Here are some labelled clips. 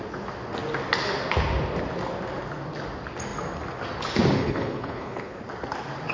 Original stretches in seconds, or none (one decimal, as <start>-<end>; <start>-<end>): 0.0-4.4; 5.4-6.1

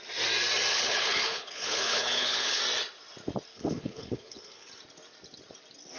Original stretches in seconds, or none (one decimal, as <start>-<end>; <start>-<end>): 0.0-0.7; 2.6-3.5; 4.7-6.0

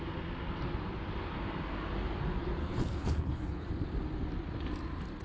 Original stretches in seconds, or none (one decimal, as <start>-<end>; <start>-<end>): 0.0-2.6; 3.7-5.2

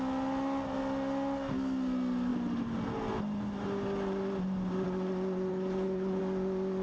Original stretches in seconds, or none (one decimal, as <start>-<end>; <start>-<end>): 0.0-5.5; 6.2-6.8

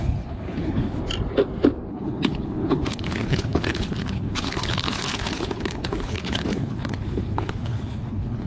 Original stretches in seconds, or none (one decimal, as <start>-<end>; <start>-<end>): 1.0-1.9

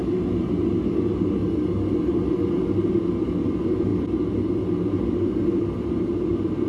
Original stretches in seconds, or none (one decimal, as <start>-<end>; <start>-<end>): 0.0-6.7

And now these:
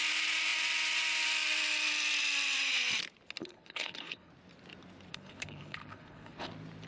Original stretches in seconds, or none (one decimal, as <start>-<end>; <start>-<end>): 0.0-3.4; 4.3-5.1; 6.5-6.9